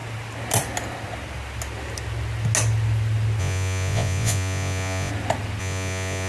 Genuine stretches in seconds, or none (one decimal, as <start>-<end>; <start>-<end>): 0.0-3.4; 5.1-5.6